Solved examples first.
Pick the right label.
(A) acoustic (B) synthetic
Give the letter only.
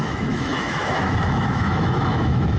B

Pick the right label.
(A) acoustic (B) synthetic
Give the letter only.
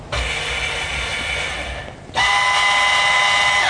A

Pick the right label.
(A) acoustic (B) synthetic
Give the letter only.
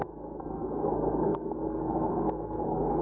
B